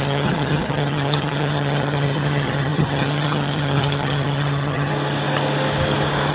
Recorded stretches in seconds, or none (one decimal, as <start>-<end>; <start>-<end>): 4.9-6.3